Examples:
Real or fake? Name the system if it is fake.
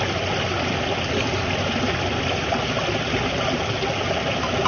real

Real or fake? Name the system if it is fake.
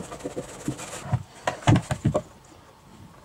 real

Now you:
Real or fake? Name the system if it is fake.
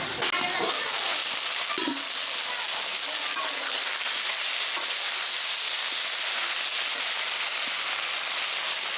real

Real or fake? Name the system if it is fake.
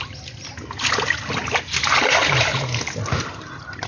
real